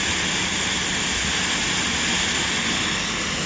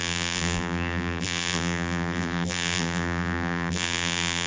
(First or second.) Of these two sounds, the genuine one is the first